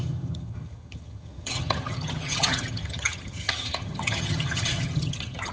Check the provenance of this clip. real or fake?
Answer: fake